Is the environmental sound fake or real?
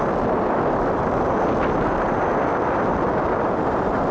real